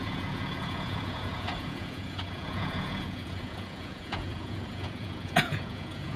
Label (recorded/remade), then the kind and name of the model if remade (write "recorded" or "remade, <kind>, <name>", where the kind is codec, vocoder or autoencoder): remade, vocoder, Vocos